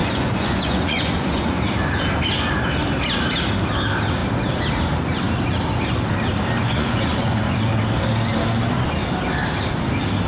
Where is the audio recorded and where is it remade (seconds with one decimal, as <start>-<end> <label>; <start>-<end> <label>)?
0.0-1.5 remade; 1.5-6.6 recorded; 6.6-7.7 remade; 7.7-10.3 recorded